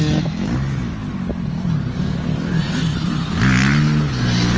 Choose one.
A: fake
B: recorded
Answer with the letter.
B